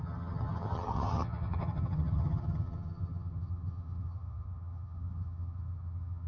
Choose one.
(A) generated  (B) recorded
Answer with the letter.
A